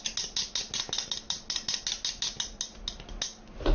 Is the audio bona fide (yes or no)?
yes